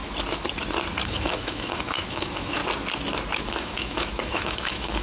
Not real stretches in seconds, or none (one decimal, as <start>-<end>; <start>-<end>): 1.1-2.6; 3.5-5.0